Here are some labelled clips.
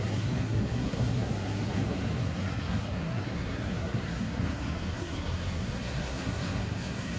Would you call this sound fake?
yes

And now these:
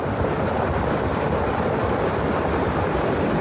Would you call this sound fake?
no